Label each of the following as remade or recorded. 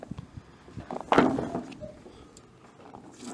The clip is recorded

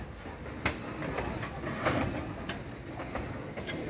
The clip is recorded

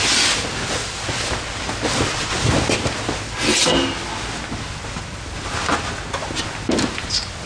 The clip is recorded